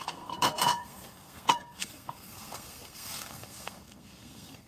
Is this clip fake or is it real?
fake